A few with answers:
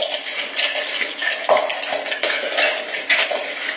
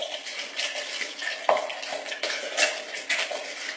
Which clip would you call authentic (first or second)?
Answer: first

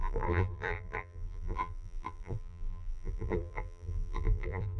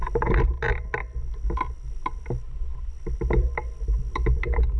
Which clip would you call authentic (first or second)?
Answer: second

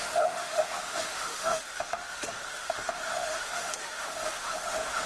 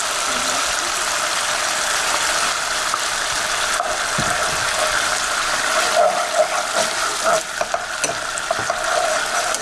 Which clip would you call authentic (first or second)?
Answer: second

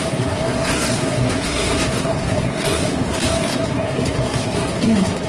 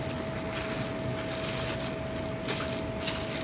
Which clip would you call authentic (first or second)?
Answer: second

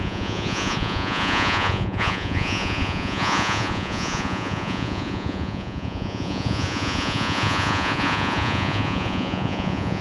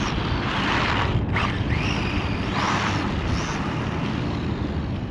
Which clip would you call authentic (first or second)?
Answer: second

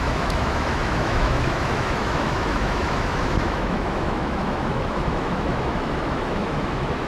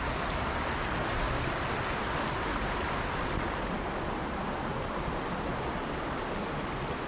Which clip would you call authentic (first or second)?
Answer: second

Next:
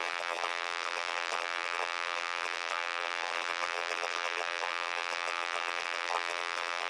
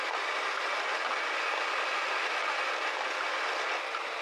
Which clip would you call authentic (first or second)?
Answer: second